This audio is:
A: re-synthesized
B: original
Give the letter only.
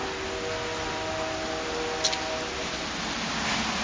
B